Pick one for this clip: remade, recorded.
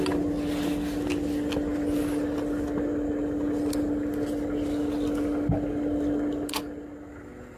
recorded